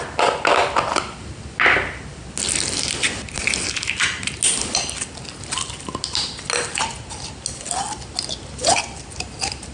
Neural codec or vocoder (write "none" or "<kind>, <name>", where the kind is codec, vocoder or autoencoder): none